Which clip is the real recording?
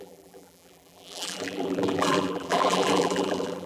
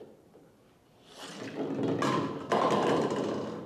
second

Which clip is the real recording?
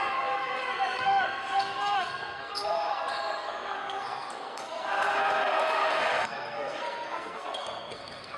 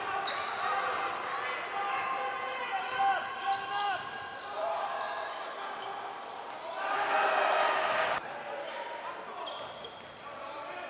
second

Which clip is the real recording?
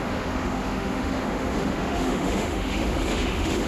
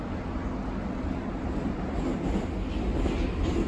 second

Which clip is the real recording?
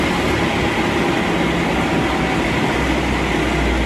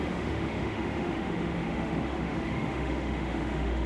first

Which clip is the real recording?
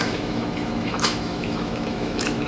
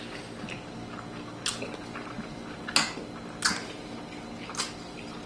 second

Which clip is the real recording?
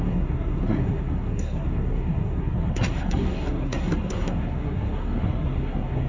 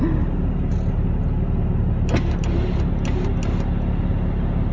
second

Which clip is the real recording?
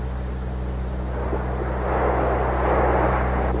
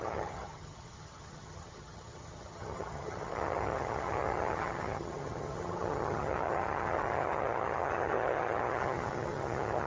first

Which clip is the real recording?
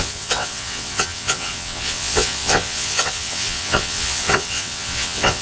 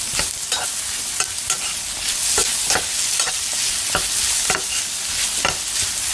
second